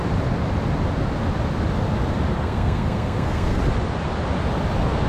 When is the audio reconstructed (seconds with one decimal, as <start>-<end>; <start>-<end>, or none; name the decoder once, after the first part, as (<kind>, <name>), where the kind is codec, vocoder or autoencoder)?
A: 2.4-3.6 (codec, SNAC)